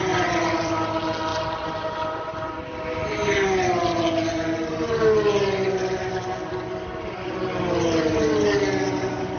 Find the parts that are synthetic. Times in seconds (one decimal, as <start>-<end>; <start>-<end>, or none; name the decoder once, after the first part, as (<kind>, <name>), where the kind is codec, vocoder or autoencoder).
none